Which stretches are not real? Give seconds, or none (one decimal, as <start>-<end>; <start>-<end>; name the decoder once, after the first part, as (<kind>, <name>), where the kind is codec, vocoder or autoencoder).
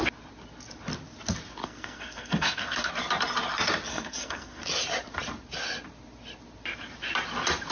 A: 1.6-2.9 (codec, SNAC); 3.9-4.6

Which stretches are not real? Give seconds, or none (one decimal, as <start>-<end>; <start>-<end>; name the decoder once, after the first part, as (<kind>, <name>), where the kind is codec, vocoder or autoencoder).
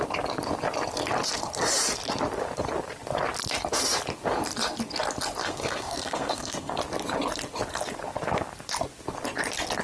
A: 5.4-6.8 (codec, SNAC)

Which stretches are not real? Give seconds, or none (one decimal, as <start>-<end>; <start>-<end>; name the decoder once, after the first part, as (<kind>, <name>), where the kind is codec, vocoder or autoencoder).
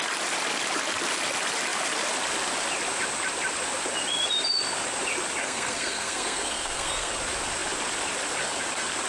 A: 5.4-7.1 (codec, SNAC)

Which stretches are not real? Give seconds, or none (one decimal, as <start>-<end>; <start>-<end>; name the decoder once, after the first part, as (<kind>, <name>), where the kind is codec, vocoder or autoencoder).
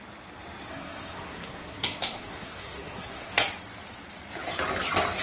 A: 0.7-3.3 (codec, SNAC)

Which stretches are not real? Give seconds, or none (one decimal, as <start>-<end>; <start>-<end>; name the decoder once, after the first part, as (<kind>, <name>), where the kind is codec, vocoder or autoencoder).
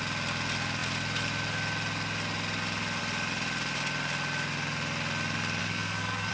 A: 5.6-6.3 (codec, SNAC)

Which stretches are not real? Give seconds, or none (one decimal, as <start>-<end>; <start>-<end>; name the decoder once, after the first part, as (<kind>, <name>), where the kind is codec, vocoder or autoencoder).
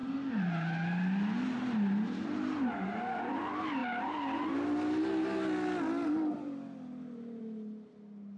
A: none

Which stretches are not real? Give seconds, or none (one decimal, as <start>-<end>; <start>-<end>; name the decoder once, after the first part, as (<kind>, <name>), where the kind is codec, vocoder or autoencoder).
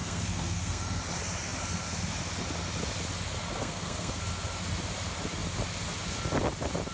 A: 0.0-1.0 (codec, SNAC); 3.6-4.2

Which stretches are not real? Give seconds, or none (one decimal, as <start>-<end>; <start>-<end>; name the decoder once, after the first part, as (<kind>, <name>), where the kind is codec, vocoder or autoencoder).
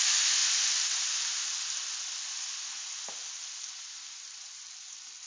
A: none